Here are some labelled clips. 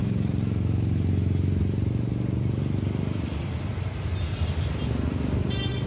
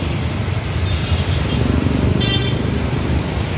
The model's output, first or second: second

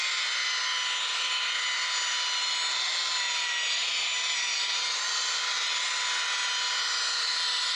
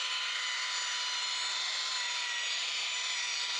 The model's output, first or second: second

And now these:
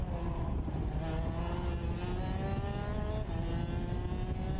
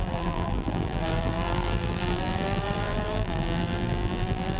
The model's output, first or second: second